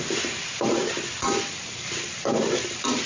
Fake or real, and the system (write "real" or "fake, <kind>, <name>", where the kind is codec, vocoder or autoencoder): fake, vocoder, BigVGAN v2